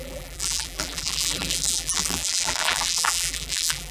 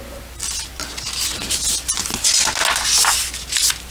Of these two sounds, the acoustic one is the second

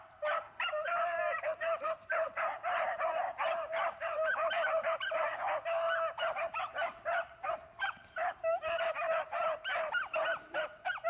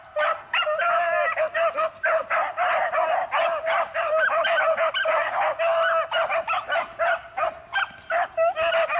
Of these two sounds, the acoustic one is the second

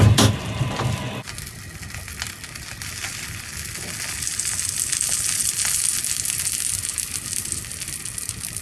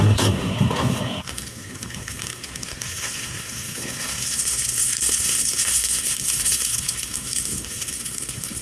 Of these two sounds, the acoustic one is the first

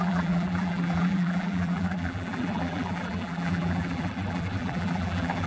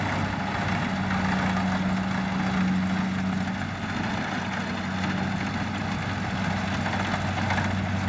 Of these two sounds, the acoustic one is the second